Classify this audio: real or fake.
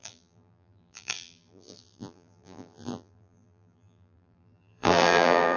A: fake